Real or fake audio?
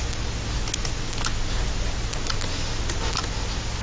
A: real